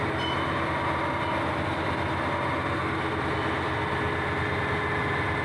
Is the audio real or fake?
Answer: real